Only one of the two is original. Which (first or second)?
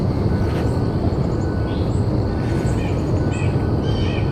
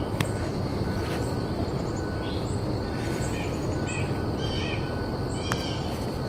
second